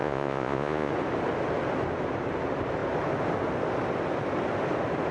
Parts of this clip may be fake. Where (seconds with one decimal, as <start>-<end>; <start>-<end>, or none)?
0.0-0.9